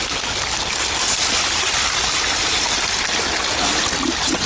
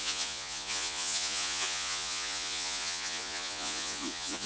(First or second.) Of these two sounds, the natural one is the first